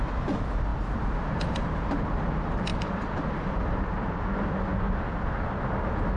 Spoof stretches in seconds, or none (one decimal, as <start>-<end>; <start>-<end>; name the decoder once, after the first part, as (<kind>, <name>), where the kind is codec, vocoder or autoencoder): 0.7-2.3 (vocoder, BigVGAN v2); 2.7-4.2